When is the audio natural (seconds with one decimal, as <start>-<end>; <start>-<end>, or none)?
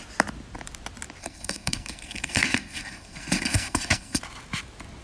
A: 0.0-1.2; 4.2-5.0